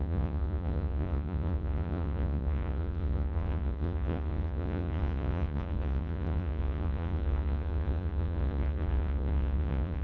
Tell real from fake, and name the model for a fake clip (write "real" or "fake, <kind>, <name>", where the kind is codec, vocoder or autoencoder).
fake, vocoder, Vocos